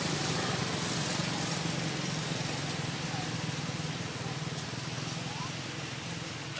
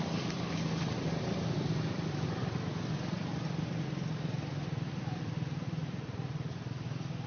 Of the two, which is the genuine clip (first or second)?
first